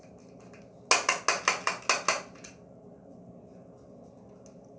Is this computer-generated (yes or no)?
no